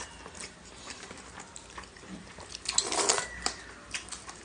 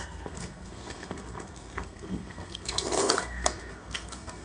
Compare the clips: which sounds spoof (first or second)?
second